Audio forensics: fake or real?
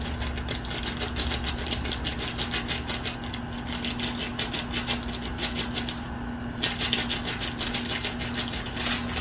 real